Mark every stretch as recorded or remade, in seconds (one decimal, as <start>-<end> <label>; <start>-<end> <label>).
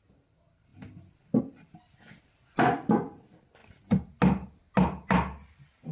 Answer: 0.0-3.6 recorded; 3.6-4.2 remade; 4.2-5.9 recorded